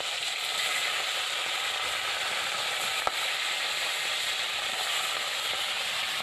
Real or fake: real